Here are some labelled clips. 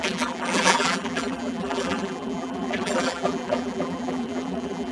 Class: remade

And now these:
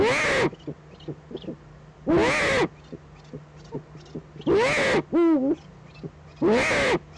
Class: recorded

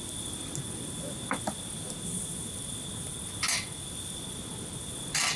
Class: recorded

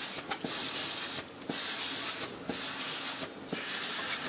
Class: recorded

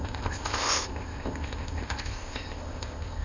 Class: remade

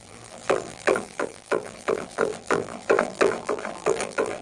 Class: remade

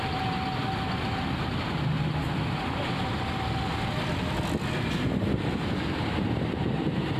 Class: recorded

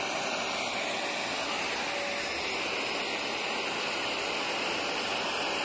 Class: recorded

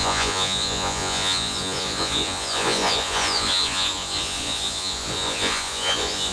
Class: remade